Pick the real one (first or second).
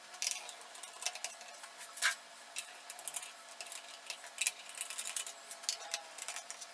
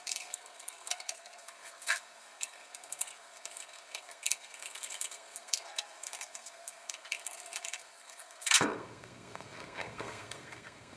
first